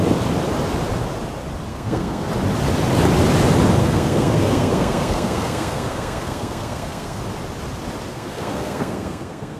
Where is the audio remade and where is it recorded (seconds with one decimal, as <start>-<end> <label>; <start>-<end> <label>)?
0.0-1.7 recorded; 1.7-2.3 remade; 2.3-3.8 recorded; 3.8-7.2 remade; 7.2-8.1 recorded; 8.1-9.6 remade